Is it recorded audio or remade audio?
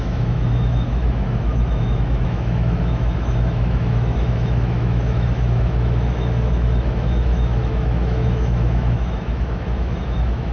remade